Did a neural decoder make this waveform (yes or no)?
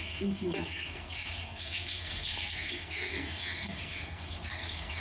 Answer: yes